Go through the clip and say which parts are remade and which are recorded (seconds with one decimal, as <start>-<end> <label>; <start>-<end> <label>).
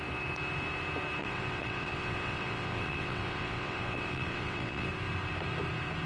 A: 0.0-1.2 recorded; 1.2-4.9 remade; 4.9-6.1 recorded